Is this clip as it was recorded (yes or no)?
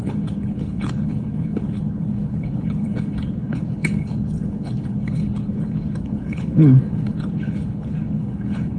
no